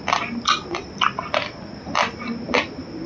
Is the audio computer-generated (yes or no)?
no